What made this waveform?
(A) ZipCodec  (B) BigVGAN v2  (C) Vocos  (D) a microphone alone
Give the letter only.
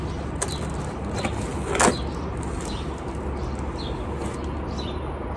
D